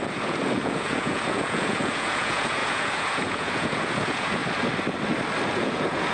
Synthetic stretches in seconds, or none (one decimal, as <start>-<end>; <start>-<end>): 0.0-4.4; 5.5-6.1